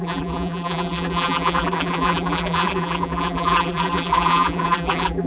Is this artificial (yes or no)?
yes